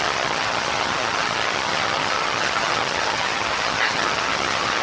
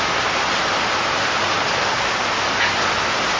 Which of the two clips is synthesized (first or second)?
first